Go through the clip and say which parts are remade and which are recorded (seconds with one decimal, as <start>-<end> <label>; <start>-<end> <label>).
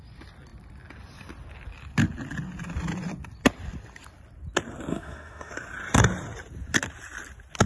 0.0-4.9 recorded; 4.9-5.5 remade; 5.5-7.7 recorded